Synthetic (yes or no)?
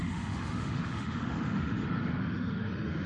yes